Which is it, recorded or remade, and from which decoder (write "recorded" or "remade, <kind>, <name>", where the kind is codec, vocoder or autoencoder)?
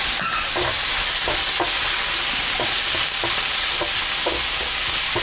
recorded